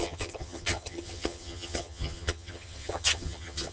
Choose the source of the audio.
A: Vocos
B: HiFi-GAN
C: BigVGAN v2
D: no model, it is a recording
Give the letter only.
B